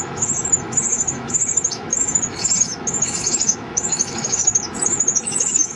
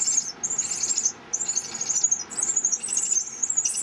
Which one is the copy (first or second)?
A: first